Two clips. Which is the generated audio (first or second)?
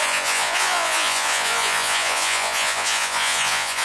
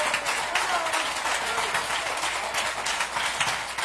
first